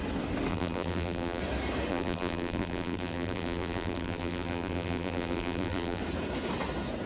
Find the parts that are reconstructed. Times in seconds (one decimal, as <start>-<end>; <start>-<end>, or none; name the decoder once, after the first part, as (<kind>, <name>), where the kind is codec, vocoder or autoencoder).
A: 0.5-1.4 (vocoder, BigVGAN v2); 1.9-6.0